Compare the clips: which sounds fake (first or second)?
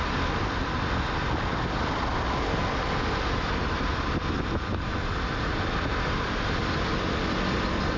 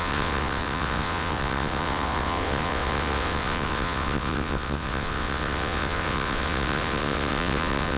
second